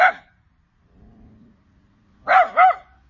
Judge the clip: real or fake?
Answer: real